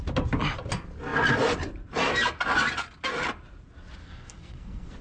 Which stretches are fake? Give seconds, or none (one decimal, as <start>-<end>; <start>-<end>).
4.0-5.0